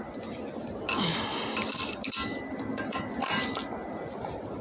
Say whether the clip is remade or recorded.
recorded